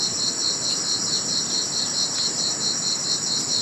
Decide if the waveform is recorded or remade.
recorded